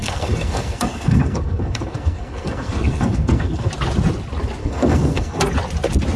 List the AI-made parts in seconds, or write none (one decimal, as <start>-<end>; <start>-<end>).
0.0-3.7; 4.6-5.4

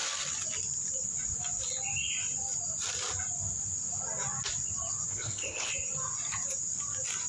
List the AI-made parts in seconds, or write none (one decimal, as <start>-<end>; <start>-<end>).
5.1-5.7

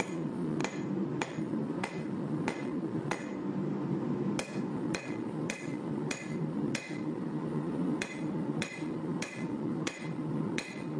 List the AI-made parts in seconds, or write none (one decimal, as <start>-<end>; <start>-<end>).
0.0-0.6; 1.2-3.3; 4.7-11.0

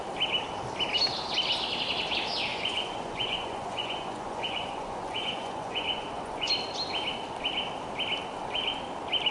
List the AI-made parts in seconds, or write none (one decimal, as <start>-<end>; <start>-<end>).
2.5-6.5